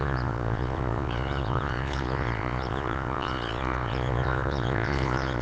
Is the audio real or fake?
fake